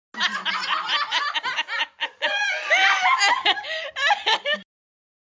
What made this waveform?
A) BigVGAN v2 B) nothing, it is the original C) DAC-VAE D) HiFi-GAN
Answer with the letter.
B